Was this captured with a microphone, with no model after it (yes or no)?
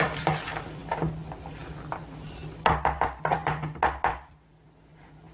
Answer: yes